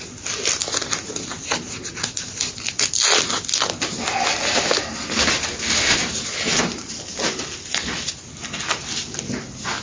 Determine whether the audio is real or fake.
real